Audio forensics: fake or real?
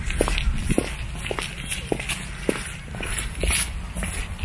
real